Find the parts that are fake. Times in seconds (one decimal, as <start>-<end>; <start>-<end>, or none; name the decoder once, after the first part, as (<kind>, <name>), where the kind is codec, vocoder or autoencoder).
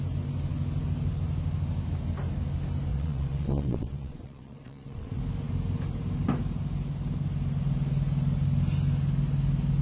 2.9-5.2 (vocoder, WaveNeXt)